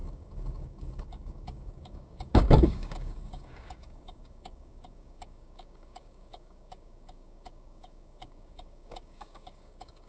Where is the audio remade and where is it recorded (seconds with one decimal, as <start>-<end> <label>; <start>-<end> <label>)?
0.0-10.1 remade